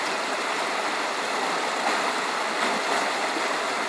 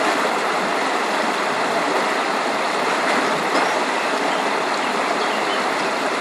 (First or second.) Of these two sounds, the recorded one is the first